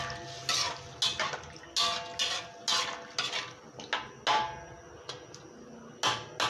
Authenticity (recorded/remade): recorded